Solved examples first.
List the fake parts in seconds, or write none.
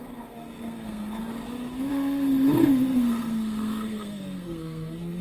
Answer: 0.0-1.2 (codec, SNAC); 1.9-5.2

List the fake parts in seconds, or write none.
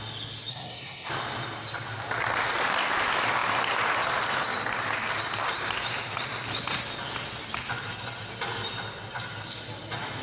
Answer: 0.5-1.1 (codec, SNAC)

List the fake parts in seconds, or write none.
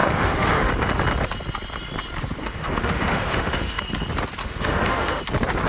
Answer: 0.0-0.7 (autoencoder, DAC-VAE); 2.4-3.8; 4.4-5.2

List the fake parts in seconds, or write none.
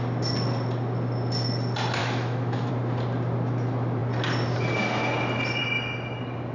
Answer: 2.0-2.7 (autoencoder, DAC-VAE)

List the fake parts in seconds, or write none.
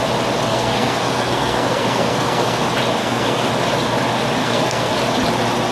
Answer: 0.5-2.6 (codec, SNAC); 3.0-3.5; 4.4-4.9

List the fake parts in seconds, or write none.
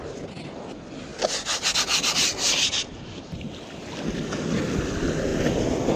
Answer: none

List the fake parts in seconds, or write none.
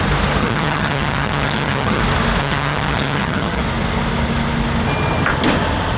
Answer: 0.4-2.0 (vocoder, HiFi-GAN); 2.4-3.6